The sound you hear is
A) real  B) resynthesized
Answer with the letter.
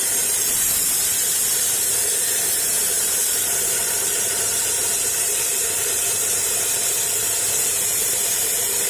B